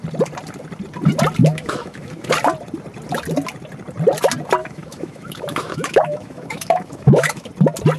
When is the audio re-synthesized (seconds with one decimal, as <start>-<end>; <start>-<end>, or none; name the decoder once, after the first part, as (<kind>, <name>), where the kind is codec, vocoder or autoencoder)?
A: 1.4-2.3 (autoencoder, DAC-VAE); 4.6-7.5

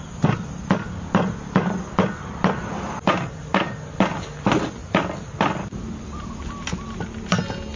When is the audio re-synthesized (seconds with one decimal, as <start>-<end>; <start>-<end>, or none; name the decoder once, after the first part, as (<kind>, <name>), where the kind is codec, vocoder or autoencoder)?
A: none